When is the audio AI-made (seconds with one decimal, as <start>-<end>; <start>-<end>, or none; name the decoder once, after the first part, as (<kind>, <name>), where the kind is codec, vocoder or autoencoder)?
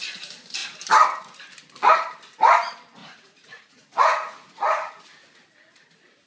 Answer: 3.0-4.9 (vocoder, Vocos)